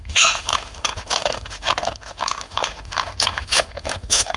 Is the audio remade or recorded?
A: remade